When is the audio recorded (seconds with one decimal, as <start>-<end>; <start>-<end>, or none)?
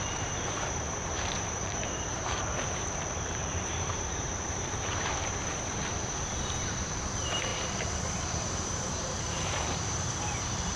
none